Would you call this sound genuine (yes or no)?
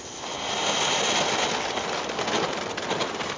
yes